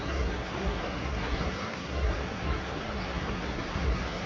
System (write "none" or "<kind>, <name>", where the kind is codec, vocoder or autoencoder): codec, SNAC